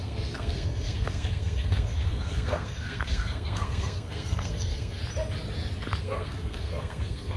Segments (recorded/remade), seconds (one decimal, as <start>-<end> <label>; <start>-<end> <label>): 0.0-5.0 remade; 5.0-6.0 recorded; 6.0-7.4 remade